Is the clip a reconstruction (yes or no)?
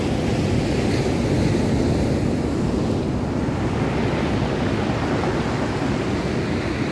no